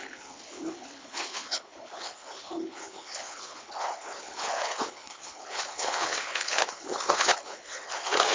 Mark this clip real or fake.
fake